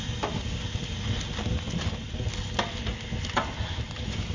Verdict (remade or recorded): recorded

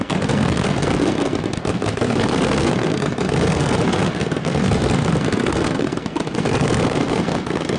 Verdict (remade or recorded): remade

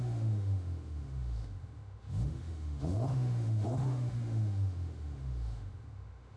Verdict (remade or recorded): remade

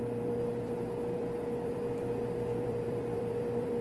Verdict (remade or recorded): remade